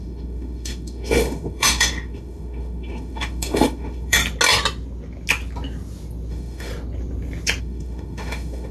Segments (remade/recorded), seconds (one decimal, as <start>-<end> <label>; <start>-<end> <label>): 0.0-4.2 remade; 4.2-6.3 recorded; 6.3-6.7 remade; 6.7-7.6 recorded; 7.6-8.7 remade